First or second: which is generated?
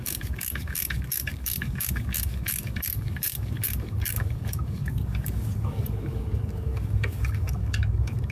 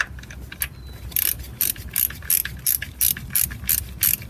first